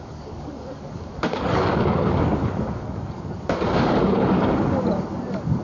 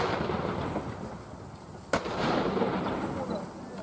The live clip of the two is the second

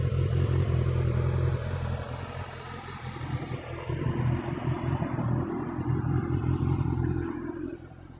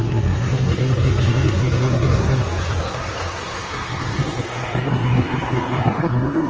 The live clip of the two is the first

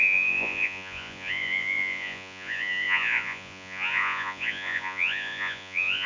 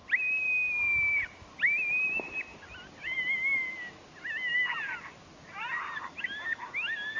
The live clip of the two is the second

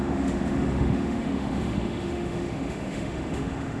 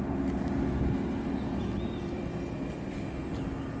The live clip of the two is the second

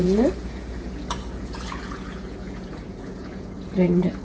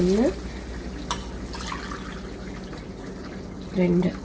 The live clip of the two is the second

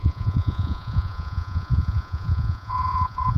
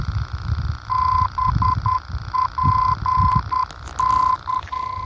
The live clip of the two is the second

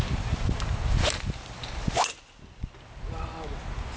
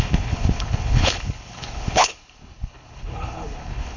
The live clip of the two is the first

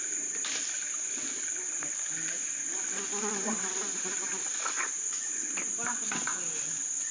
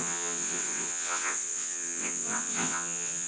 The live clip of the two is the first